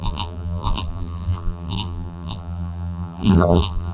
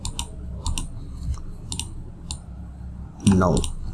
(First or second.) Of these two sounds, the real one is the second